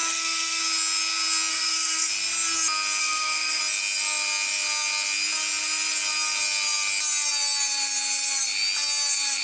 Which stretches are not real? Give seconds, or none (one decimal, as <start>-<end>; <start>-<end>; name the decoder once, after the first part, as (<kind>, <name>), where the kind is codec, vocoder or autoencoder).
0.0-0.6 (codec, SNAC); 1.5-2.1; 3.0-3.6